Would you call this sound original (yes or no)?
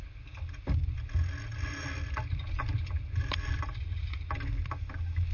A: yes